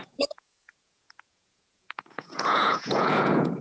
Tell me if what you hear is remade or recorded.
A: remade